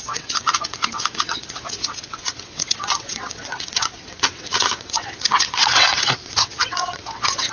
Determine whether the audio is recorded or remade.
remade